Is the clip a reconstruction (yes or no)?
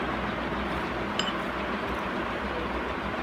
no